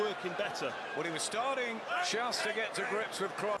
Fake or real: real